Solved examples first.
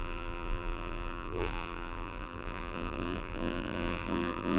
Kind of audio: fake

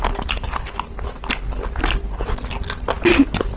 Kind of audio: real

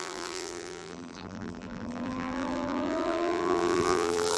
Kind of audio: fake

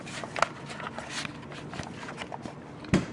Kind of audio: real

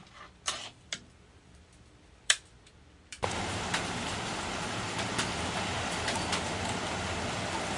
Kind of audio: fake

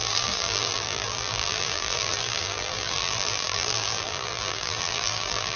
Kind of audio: fake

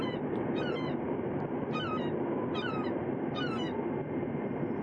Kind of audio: fake